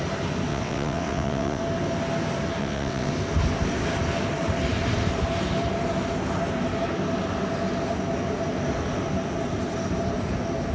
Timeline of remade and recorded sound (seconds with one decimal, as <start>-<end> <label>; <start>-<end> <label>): 0.0-0.5 recorded; 0.5-1.6 remade; 1.6-2.6 recorded; 2.6-3.1 remade; 3.1-10.7 recorded